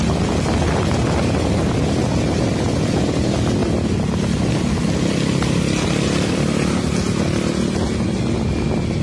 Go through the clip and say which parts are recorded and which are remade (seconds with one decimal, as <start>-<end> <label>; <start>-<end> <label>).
0.0-3.6 recorded; 3.6-4.4 remade; 4.4-9.0 recorded